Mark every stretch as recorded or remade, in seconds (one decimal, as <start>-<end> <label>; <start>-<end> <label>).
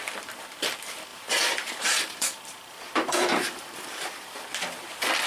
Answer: 0.0-1.1 recorded; 1.1-4.3 remade; 4.3-5.3 recorded